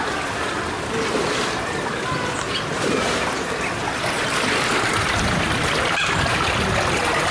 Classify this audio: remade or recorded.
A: recorded